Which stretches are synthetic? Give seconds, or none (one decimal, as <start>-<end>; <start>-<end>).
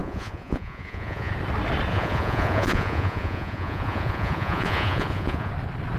0.0-1.3; 1.9-5.5